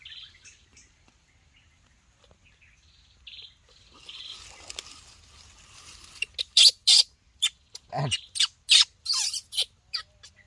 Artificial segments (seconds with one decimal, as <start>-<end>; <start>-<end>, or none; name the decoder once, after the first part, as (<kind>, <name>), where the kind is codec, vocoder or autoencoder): none